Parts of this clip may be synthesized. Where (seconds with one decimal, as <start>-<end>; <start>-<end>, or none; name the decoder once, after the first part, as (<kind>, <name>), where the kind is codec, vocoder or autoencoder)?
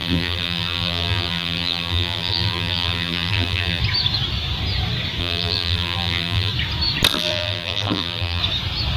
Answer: 0.0-3.8 (vocoder, BigVGAN v2); 5.2-6.5; 7.1-8.4